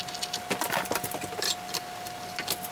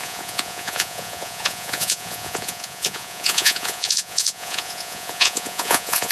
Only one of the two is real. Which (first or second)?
first